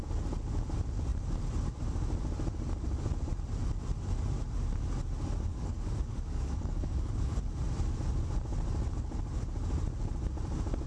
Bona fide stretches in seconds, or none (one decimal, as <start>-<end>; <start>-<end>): 0.0-5.5; 7.4-10.9